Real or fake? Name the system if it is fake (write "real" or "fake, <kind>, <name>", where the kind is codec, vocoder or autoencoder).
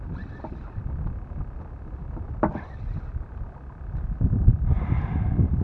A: real